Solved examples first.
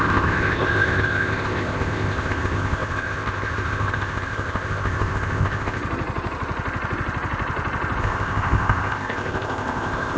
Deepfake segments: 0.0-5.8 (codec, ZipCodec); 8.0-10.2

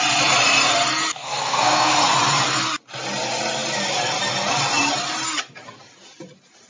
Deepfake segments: 1.1-1.9 (codec, SNAC)

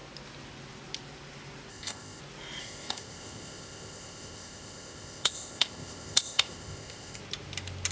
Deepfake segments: 1.7-2.2 (codec, ZipCodec); 2.6-7.2

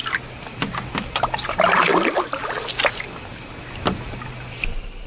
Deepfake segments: none

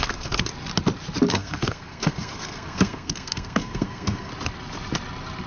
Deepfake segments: 0.0-0.5 (codec, SNAC); 1.3-4.3